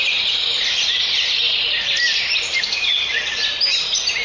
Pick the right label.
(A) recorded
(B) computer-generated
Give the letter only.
A